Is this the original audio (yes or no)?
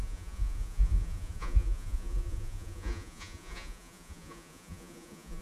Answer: no